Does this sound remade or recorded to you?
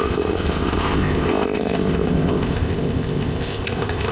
remade